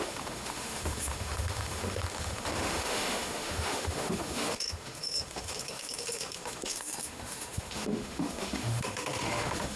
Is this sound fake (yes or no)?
yes